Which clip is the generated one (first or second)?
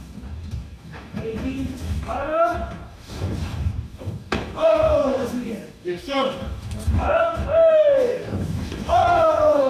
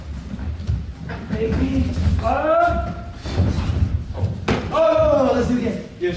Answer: first